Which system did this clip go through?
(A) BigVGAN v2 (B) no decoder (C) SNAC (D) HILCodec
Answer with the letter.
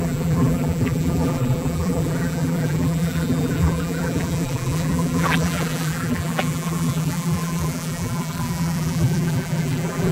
A